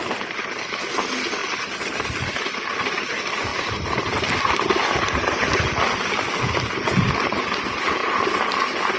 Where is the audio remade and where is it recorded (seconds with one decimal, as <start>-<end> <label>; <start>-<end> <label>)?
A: 0.0-9.0 recorded